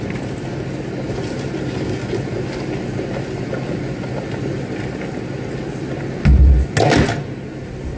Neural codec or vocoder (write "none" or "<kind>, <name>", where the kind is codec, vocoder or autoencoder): none